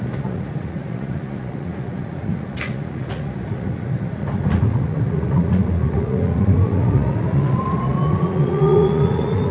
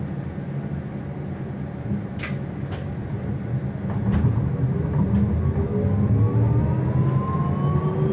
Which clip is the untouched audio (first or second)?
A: second